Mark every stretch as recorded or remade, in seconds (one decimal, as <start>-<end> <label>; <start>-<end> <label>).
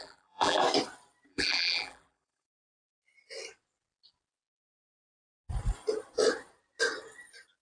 0.0-0.6 remade; 0.6-1.3 recorded; 1.3-2.8 remade; 2.8-7.6 recorded